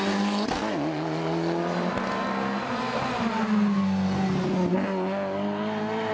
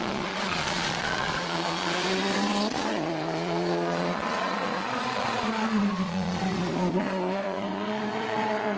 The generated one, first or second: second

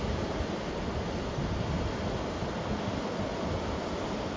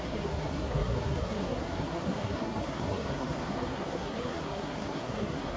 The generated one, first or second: second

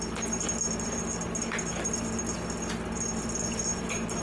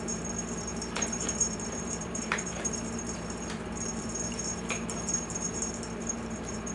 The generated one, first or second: second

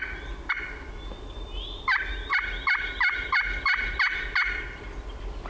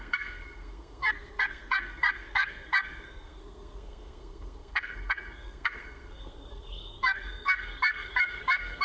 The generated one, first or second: second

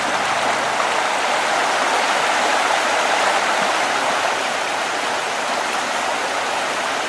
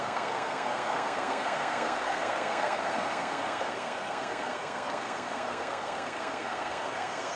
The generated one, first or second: second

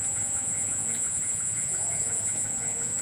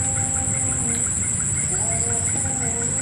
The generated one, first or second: first